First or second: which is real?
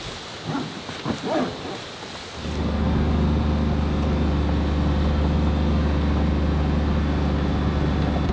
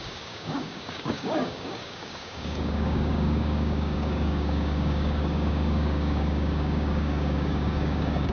first